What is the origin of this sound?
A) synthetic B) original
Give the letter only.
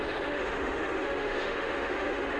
A